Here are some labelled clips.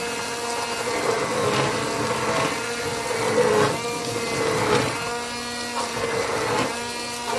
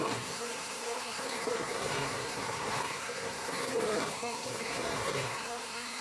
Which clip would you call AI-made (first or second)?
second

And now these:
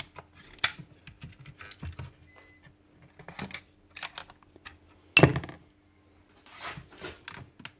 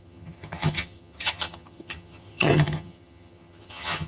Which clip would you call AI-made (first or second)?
second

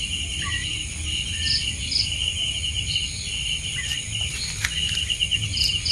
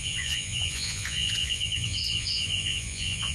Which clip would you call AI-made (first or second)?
second